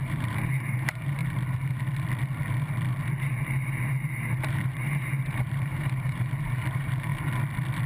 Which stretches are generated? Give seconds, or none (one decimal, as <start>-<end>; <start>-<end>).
0.0-1.2; 3.4-7.1